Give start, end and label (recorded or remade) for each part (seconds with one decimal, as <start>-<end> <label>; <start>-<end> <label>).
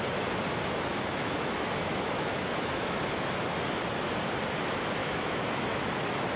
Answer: 0.0-0.9 recorded; 0.9-3.0 remade; 3.0-5.0 recorded; 5.0-5.9 remade; 5.9-6.4 recorded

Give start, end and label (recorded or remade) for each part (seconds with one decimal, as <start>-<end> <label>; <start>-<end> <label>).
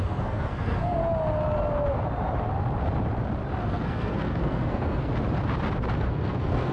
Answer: 0.0-1.0 remade; 1.0-3.6 recorded; 3.6-5.1 remade; 5.1-6.0 recorded; 6.0-6.7 remade